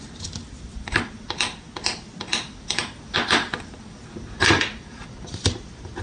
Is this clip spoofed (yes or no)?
no